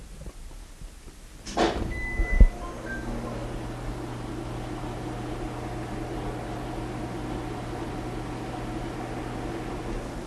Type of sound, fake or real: real